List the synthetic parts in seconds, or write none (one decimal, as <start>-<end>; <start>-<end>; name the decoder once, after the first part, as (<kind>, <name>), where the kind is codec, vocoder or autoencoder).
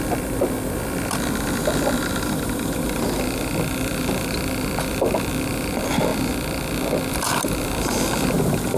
0.0-6.1 (vocoder, BigVGAN v2); 7.1-8.8